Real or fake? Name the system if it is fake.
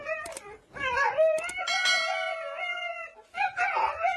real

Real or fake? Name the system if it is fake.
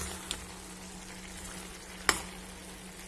real